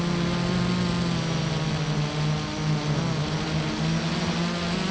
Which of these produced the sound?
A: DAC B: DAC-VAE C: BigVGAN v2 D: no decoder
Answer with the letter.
D